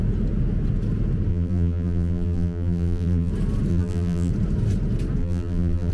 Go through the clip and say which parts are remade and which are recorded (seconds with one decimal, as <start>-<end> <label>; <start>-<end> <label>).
0.0-1.3 recorded; 1.3-3.3 remade; 3.3-3.7 recorded; 3.7-4.3 remade; 4.3-5.2 recorded; 5.2-5.9 remade